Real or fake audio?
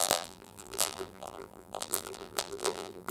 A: fake